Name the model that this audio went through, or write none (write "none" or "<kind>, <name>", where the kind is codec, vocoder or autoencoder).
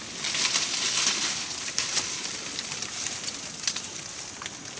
none